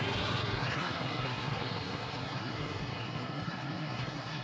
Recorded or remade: remade